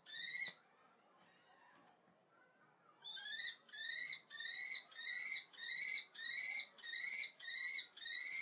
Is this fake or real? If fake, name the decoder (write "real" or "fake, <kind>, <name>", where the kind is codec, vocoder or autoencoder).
real